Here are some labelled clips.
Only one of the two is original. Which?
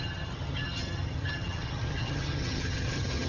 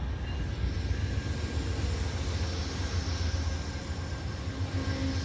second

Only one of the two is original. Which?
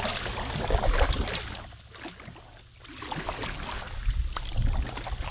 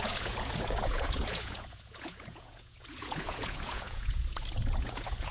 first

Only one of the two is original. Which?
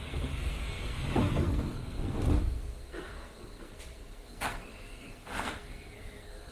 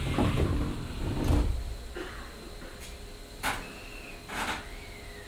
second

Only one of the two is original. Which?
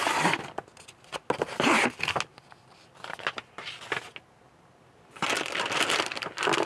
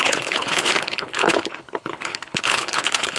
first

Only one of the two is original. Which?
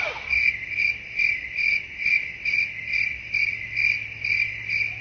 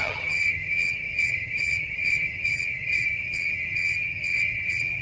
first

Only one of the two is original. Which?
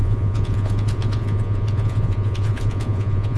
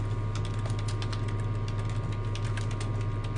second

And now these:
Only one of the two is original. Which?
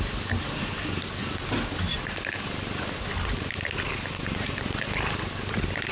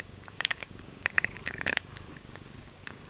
first